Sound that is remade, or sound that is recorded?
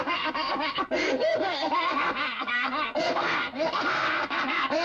remade